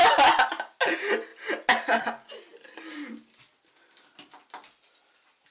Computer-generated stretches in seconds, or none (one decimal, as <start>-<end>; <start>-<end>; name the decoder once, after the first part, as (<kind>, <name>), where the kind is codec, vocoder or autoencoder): none